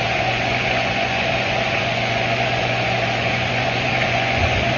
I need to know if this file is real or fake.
fake